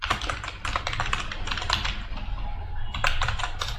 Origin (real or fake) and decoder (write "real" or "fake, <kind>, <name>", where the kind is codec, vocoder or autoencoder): real